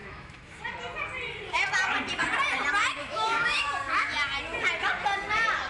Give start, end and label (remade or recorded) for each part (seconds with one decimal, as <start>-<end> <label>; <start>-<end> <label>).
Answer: 0.0-0.6 remade; 0.6-3.0 recorded; 3.0-3.7 remade; 3.7-5.7 recorded

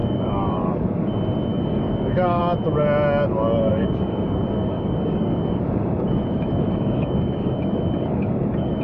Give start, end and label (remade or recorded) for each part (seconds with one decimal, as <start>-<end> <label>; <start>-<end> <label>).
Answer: 0.0-1.1 remade; 1.1-1.5 recorded; 1.5-2.4 remade; 2.4-3.7 recorded; 3.7-8.8 remade